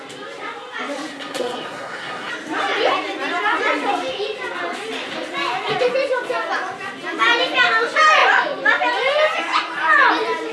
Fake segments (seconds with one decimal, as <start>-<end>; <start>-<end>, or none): 1.1-2.3